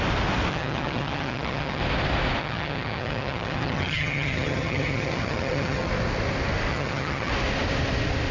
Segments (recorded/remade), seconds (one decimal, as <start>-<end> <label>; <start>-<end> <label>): 0.0-0.5 recorded; 0.5-1.8 remade; 1.8-2.4 recorded; 2.4-5.9 remade; 5.9-6.7 recorded; 6.7-7.3 remade; 7.3-8.3 recorded

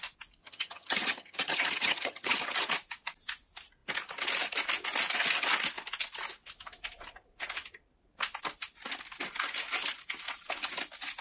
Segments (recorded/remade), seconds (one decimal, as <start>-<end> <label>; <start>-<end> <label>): 0.0-0.4 recorded; 0.4-2.5 remade; 2.5-11.2 recorded

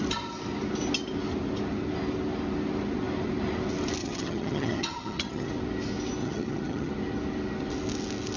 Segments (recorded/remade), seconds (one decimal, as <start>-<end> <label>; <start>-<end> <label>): 0.0-4.0 recorded; 4.0-5.5 remade; 5.5-6.2 recorded; 6.2-6.9 remade; 6.9-8.4 recorded

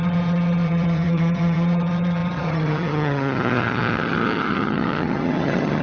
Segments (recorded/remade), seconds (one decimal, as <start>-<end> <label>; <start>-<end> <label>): 0.0-5.8 remade

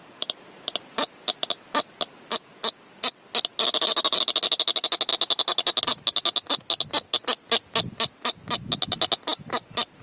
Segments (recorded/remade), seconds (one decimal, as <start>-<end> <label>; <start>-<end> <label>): 0.0-10.0 recorded

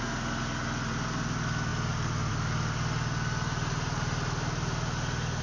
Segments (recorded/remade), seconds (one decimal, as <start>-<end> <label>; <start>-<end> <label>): 0.0-5.4 recorded